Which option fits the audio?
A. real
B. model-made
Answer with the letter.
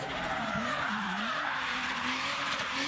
B